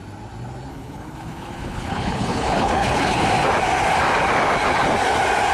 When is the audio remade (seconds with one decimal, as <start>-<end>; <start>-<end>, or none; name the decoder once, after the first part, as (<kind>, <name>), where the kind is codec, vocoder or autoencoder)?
0.7-3.2 (codec, HILCodec)